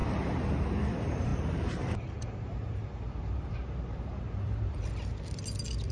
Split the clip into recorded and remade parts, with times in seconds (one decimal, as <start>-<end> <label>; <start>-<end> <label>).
0.0-1.3 recorded; 1.3-4.8 remade; 4.8-5.9 recorded

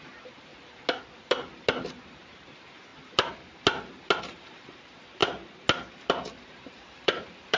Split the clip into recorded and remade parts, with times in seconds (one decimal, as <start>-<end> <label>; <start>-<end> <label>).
0.0-0.5 remade; 0.5-1.9 recorded; 1.9-2.9 remade; 2.9-4.2 recorded; 4.2-5.2 remade; 5.2-5.9 recorded; 5.9-7.6 remade

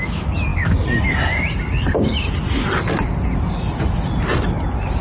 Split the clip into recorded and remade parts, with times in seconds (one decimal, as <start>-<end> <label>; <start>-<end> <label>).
0.0-5.0 recorded

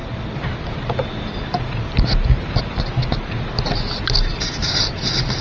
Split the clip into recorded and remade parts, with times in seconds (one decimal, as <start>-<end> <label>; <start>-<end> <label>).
0.0-5.4 recorded

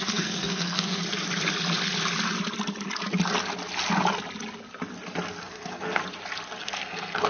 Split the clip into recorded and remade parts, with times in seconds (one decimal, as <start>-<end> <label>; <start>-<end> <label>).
0.0-1.0 remade; 1.0-5.4 recorded; 5.4-6.0 remade; 6.0-6.6 recorded; 6.6-7.3 remade

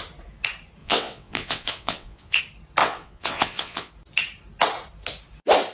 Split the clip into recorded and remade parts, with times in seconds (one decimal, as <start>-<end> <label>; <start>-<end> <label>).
0.0-0.8 recorded; 0.8-2.4 remade; 2.4-2.8 recorded; 2.8-3.9 remade; 3.9-5.7 recorded

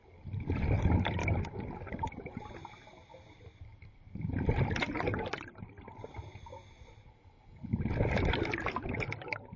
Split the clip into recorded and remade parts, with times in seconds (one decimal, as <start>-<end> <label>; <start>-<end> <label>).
0.0-9.6 recorded